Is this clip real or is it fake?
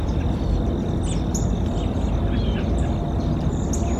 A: real